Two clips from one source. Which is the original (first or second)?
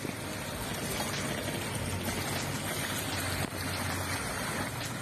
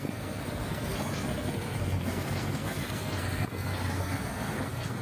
first